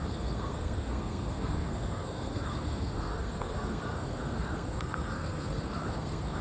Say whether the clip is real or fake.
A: fake